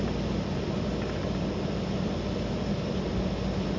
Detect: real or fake real